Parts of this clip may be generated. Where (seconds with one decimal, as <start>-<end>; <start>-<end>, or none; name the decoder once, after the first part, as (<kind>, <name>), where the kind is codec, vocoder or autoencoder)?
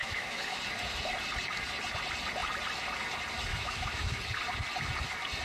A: 0.0-0.6 (autoencoder, DAC-VAE); 3.5-4.2